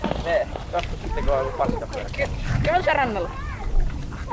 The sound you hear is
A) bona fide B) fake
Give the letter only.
A